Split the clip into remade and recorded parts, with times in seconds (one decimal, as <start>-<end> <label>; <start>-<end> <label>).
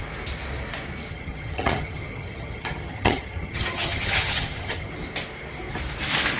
0.0-1.1 recorded; 1.1-4.9 remade; 4.9-6.4 recorded